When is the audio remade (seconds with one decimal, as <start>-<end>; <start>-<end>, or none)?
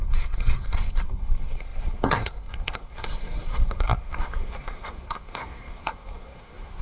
0.0-6.8